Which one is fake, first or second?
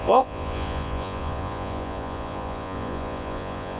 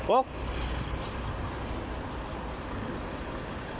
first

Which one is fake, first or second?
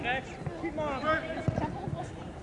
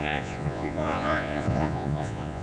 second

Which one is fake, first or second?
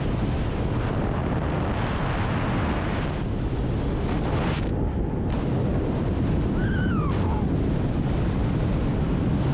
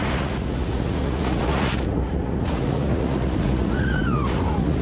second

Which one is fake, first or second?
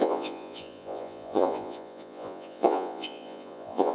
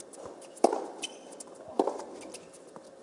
first